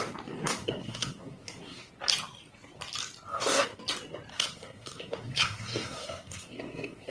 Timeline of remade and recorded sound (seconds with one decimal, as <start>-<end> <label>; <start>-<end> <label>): 0.0-0.4 recorded; 0.4-1.9 remade; 1.9-3.3 recorded; 3.3-3.8 remade; 3.8-4.3 recorded; 4.3-7.1 remade